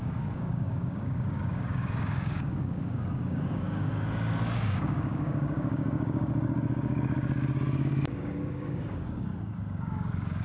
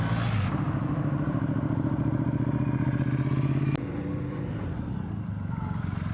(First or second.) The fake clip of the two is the first